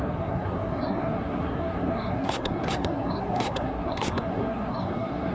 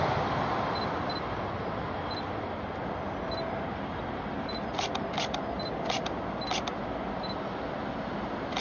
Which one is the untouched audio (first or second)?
second